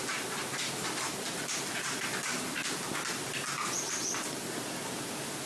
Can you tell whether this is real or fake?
real